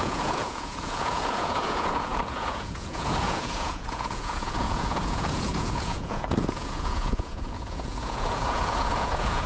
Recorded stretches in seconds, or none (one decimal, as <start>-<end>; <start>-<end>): none